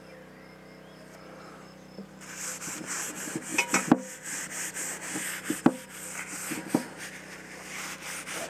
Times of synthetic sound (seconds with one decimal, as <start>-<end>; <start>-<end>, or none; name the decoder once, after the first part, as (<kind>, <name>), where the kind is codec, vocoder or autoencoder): none